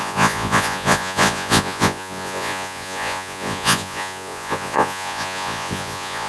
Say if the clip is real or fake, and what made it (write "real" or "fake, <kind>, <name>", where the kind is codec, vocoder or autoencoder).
fake, vocoder, Vocos